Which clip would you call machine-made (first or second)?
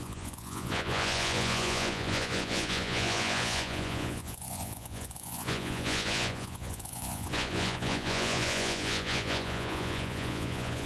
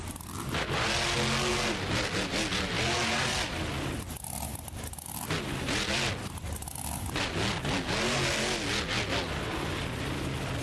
first